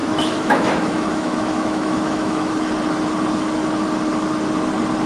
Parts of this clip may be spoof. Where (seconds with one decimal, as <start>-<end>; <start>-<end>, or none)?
0.0-2.5